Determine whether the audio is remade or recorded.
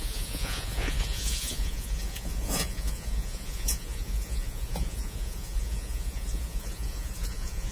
remade